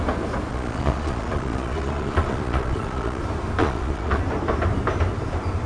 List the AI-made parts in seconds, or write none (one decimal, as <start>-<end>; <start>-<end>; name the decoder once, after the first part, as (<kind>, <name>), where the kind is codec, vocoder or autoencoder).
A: 0.5-3.2 (vocoder, Vocos); 3.6-4.2